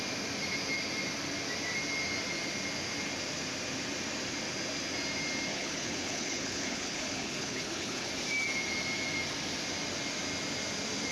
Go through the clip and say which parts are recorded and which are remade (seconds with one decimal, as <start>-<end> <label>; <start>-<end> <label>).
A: 0.0-5.5 recorded; 5.5-8.1 remade; 8.1-11.1 recorded